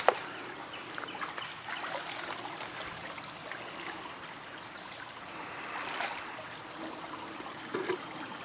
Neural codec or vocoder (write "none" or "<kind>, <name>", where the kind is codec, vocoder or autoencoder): none